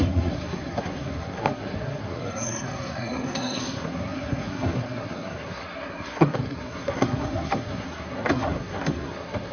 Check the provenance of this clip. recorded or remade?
remade